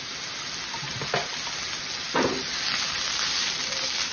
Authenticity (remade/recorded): recorded